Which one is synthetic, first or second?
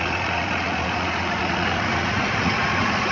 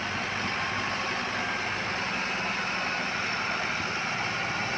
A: first